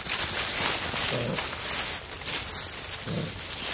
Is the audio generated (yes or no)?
no